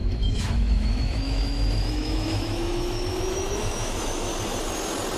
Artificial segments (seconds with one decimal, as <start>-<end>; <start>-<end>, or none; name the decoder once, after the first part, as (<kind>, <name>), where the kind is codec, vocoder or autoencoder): 0.0-4.3 (autoencoder, DAC-VAE)